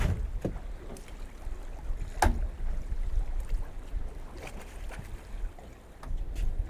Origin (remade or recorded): recorded